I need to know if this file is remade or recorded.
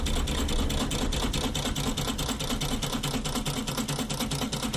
recorded